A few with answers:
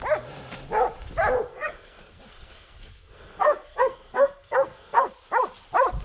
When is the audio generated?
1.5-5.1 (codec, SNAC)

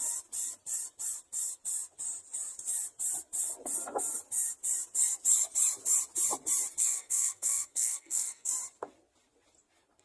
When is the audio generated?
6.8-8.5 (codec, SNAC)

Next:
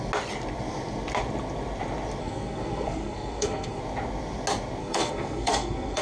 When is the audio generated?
2.2-3.8 (codec, SNAC); 4.8-6.0

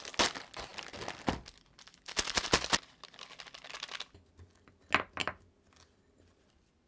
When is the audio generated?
none

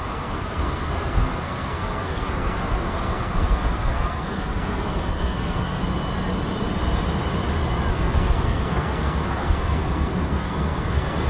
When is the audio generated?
0.0-5.8 (codec, SNAC); 7.9-11.3